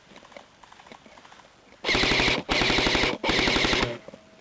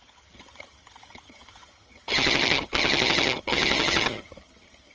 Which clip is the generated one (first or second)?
second